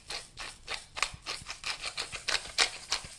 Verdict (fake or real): real